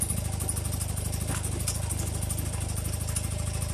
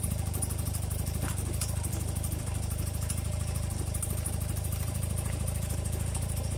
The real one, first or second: first